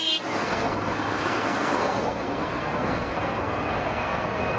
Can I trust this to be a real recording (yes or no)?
no